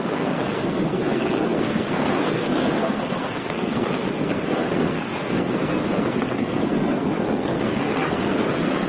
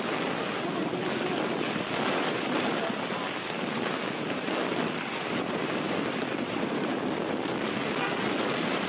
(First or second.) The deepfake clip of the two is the first